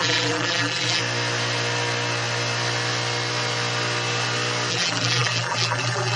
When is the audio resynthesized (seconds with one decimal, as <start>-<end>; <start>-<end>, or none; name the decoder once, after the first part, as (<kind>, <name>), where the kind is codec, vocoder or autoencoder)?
0.0-1.0 (vocoder, BigVGAN v2); 4.7-6.2